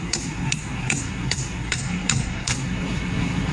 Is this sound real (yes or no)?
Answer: no